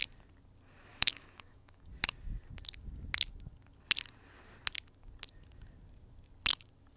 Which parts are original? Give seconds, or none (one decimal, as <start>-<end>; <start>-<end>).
0.0-0.9; 1.9-7.0